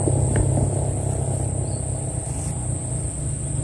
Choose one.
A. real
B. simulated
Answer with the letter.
A